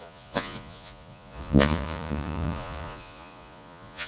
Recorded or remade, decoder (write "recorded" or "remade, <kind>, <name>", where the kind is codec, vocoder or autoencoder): remade, vocoder, Vocos